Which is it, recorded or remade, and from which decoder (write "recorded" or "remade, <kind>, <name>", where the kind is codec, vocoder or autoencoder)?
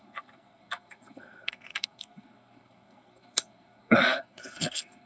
remade, codec, SNAC